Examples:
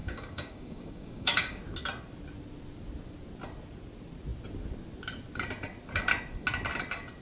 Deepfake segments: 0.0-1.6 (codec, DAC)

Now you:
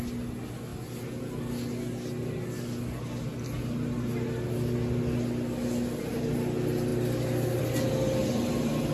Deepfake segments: none

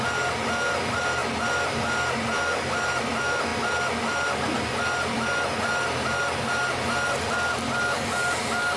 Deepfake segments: none

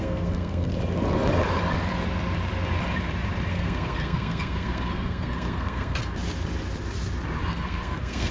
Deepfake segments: 0.0-0.7 (codec, SNAC); 3.5-6.0; 7.5-8.3

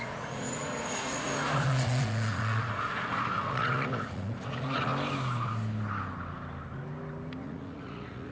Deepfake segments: 0.0-4.9 (vocoder, Vocos); 7.4-8.3

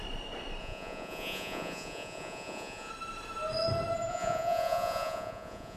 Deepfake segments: 0.6-2.9 (vocoder, Vocos); 4.1-5.8

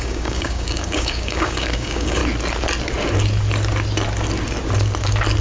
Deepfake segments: 0.0-2.2 (codec, DAC)